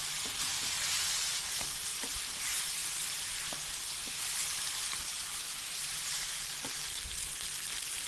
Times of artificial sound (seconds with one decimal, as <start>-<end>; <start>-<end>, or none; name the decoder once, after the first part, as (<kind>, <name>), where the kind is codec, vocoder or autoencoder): none